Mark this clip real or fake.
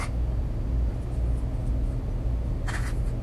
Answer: real